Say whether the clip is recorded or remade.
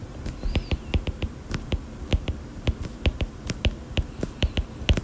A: recorded